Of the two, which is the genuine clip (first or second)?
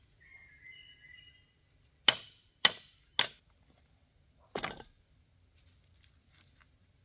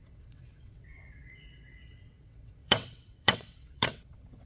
first